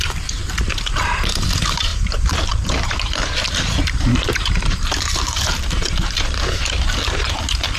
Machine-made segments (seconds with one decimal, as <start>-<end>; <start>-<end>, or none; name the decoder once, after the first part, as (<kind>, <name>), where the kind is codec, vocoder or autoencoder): 0.0-0.4 (vocoder, BigVGAN v2); 0.9-1.9; 2.5-7.8